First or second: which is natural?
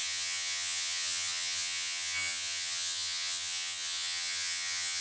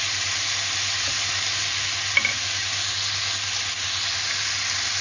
second